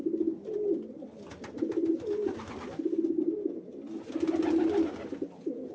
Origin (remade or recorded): recorded